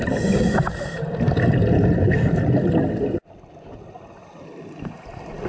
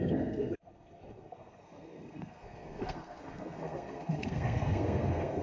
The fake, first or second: second